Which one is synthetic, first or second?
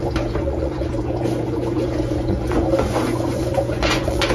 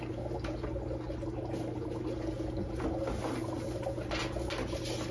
first